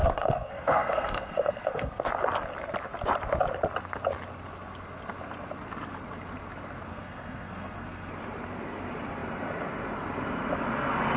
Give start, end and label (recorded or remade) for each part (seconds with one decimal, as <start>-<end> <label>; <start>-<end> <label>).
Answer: 0.0-2.1 remade; 2.1-6.9 recorded; 6.9-8.1 remade; 8.1-11.2 recorded